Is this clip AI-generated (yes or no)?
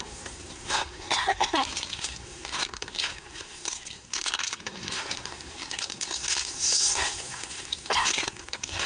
yes